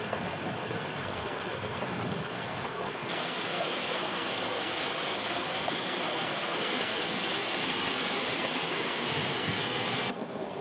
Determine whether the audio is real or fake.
fake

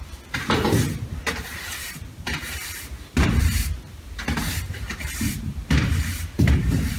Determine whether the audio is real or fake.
fake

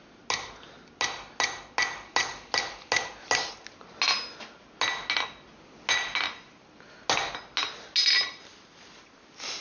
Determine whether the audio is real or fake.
real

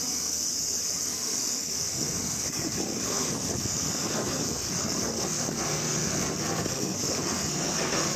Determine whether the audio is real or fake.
fake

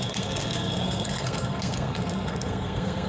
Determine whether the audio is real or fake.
fake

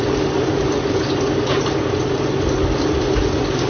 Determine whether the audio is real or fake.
real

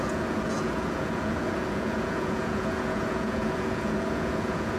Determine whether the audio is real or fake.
fake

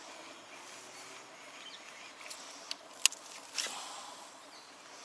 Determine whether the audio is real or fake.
real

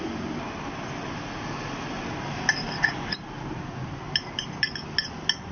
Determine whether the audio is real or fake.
real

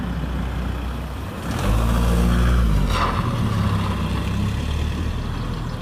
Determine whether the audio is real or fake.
real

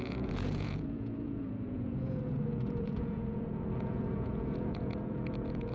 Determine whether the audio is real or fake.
fake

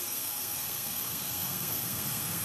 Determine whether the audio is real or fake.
fake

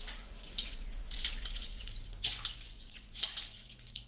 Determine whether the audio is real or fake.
fake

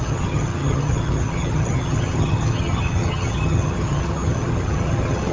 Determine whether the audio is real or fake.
fake